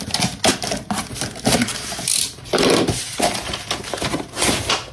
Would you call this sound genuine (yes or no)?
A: yes